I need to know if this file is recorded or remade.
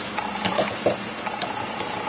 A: recorded